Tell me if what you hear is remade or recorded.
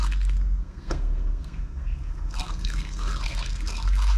remade